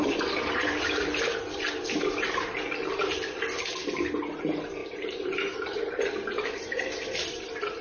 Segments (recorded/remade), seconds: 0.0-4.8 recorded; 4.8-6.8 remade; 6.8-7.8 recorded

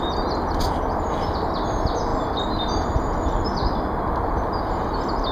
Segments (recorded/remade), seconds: 0.0-5.3 recorded

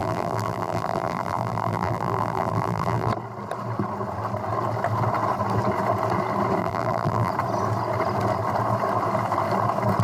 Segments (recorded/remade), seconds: 0.0-3.1 remade; 3.1-6.6 recorded; 6.6-7.3 remade; 7.3-10.0 recorded

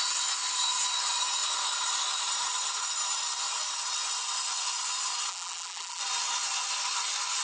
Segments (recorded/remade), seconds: 0.0-5.3 recorded; 5.3-6.0 remade; 6.0-7.4 recorded

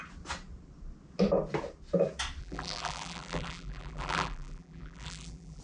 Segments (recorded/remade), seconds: 0.0-2.4 recorded; 2.4-5.6 remade

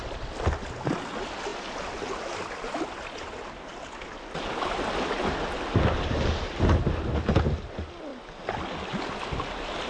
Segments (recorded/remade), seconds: 0.0-9.9 recorded

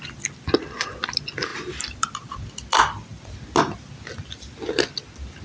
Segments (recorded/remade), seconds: 0.0-1.5 recorded; 1.5-2.5 remade; 2.5-5.4 recorded